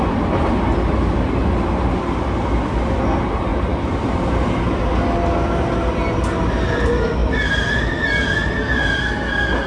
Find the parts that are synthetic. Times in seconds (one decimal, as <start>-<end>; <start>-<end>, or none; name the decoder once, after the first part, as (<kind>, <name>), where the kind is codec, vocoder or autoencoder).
3.5-4.1 (vocoder, BigVGAN v2); 7.2-8.2

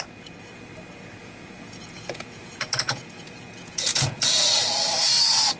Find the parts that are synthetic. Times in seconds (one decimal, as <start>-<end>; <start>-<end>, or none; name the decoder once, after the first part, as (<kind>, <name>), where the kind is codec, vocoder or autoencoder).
1.2-4.6 (vocoder, Vocos)

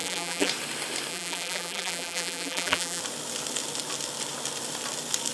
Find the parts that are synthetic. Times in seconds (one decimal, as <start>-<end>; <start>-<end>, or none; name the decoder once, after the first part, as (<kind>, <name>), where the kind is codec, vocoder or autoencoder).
0.0-0.5 (vocoder, BigVGAN v2); 1.1-3.0

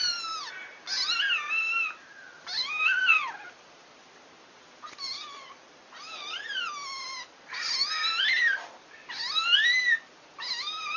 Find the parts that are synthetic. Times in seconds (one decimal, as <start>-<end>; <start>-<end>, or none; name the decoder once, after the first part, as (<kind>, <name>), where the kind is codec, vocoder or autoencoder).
3.1-4.1 (vocoder, BigVGAN v2)

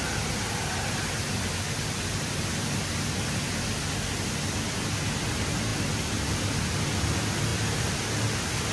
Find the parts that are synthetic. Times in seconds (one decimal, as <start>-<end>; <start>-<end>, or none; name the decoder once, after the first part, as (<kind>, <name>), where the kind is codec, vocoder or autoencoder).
none

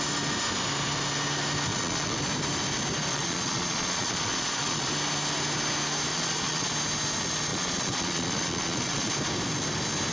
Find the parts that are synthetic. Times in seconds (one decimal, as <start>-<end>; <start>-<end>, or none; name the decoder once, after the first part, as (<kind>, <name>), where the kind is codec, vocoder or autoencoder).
1.7-2.2 (vocoder, Vocos); 3.1-4.9; 6.1-6.7; 7.5-9.1